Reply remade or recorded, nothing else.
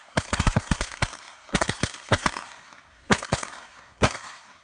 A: remade